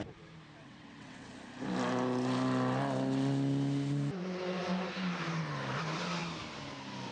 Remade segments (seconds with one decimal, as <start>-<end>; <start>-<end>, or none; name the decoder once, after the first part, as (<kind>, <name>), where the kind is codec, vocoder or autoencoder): 0.6-1.3 (vocoder, WaveNeXt)